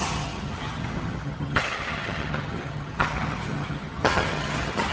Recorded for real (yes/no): no